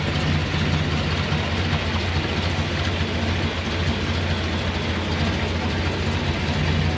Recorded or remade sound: recorded